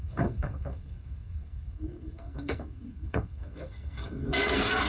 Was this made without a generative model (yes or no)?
no